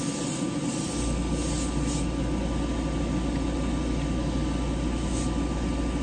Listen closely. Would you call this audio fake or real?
real